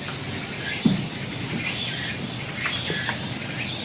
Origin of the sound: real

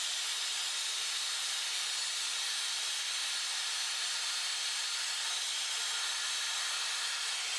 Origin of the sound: real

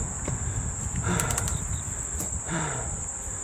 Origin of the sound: fake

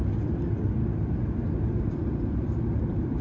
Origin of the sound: fake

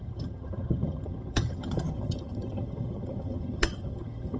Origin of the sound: fake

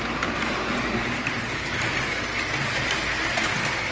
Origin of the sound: real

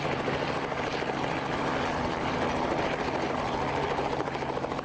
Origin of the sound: fake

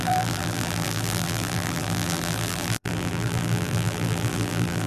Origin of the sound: fake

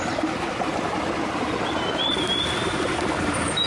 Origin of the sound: real